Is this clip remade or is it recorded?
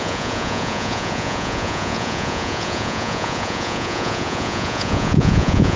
remade